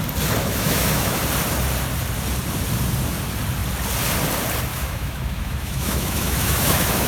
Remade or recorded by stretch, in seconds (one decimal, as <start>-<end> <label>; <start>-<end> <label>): 0.0-0.4 recorded; 0.4-1.2 remade; 1.2-4.7 recorded; 4.7-7.1 remade